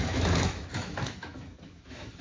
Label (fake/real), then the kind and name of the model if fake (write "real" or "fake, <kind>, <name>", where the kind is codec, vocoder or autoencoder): fake, autoencoder, DAC-VAE